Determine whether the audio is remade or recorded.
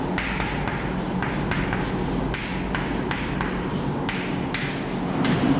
recorded